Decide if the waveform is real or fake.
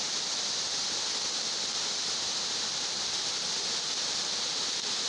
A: real